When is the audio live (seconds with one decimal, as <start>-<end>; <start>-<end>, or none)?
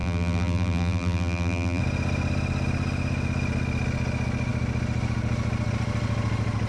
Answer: 1.8-6.7